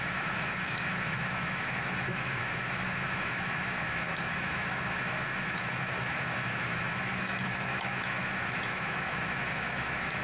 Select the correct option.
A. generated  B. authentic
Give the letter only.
A